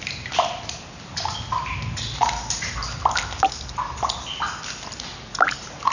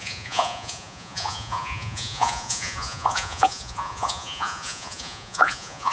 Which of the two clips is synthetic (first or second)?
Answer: second